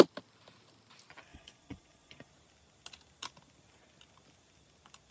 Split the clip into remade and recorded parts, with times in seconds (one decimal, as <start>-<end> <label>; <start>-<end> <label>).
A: 0.0-1.3 recorded; 1.3-2.3 remade; 2.3-5.1 recorded